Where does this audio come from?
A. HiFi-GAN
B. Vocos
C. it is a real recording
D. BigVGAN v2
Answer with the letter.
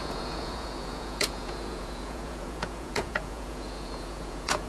B